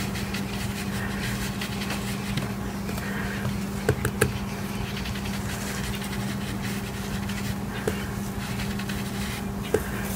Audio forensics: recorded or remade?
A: recorded